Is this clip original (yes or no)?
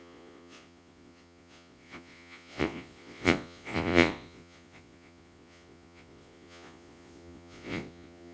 no